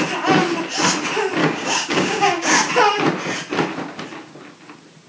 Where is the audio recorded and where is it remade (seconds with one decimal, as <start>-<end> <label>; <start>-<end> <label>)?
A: 0.0-1.4 recorded; 1.4-2.7 remade; 2.7-5.1 recorded